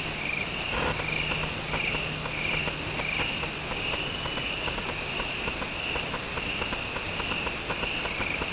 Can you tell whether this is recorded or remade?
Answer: recorded